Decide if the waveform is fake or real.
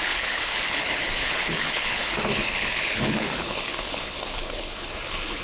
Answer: fake